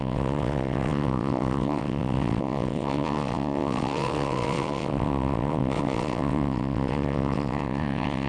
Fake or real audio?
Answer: fake